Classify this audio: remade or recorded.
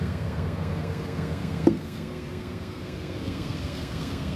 remade